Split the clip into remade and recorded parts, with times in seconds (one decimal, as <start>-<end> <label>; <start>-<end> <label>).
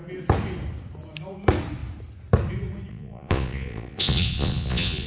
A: 0.0-2.9 recorded; 2.9-5.1 remade